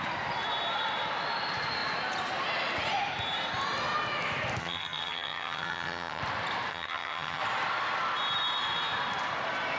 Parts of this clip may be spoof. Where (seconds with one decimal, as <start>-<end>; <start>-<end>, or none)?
4.6-6.2; 6.7-7.4